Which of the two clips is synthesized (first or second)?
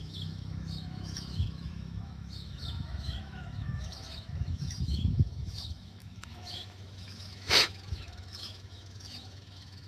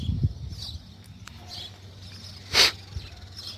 first